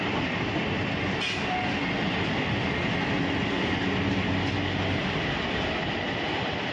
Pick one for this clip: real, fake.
real